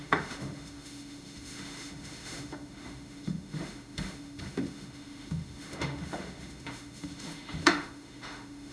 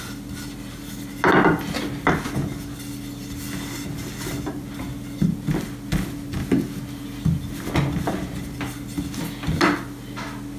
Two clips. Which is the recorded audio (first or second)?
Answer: second